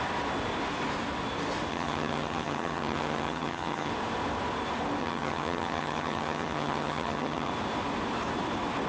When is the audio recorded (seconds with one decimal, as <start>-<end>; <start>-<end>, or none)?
0.0-1.7; 3.9-5.0; 7.5-8.9